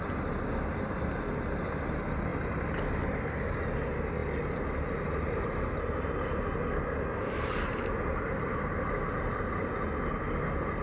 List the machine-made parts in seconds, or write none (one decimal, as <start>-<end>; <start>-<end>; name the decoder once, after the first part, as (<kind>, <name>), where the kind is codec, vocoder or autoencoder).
none